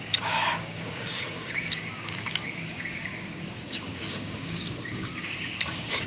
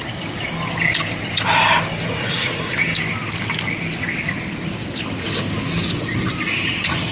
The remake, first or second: first